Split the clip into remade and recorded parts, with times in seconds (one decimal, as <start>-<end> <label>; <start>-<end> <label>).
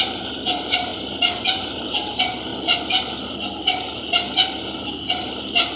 0.0-0.9 remade; 0.9-1.6 recorded; 1.6-2.5 remade; 2.5-4.9 recorded; 4.9-5.8 remade